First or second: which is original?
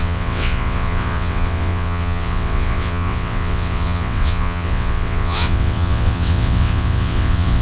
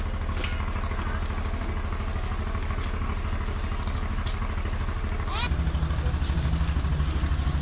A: second